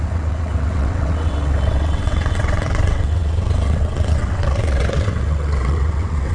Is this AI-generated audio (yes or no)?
yes